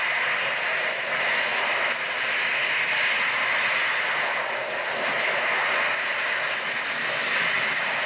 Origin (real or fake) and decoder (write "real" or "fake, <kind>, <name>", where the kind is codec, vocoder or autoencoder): real